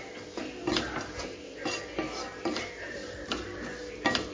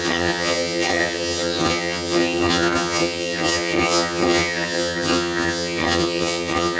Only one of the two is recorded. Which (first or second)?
first